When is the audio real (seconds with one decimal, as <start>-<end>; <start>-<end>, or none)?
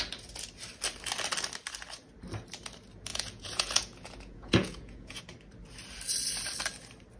0.0-3.1; 5.2-7.2